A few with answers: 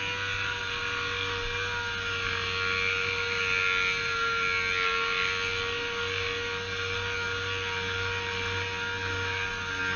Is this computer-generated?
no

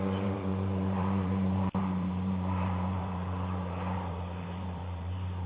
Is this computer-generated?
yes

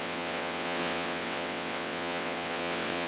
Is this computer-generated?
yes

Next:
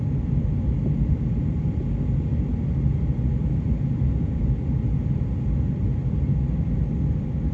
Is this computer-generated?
no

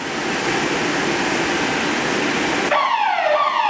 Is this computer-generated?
no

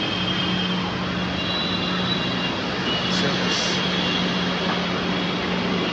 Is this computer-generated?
no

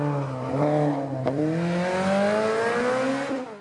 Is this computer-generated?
no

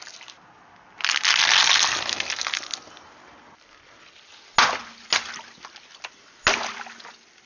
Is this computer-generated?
no